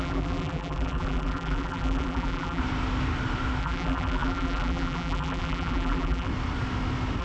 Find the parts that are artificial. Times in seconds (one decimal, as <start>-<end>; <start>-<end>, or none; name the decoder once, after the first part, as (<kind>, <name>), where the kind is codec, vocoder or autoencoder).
0.0-2.6 (vocoder, BigVGAN v2); 3.6-6.3